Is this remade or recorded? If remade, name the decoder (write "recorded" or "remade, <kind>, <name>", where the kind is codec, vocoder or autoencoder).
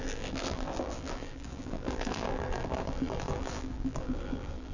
remade, vocoder, BigVGAN v2